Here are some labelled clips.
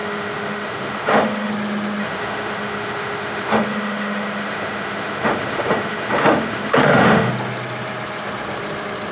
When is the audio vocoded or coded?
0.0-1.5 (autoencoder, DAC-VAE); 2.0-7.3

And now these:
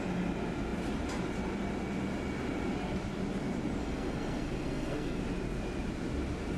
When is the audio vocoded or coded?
3.8-5.2 (codec, SNAC)